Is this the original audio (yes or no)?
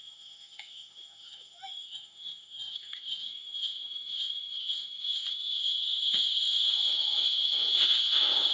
no